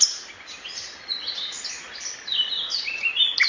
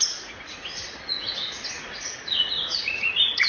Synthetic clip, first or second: second